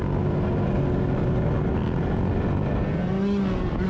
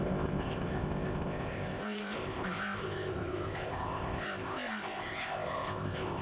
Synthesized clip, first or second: second